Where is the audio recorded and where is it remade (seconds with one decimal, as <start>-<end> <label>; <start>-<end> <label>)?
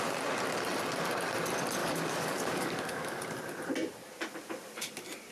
0.0-1.8 recorded; 1.8-3.2 remade; 3.2-5.3 recorded